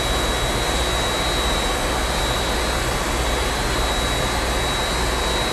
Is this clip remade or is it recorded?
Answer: recorded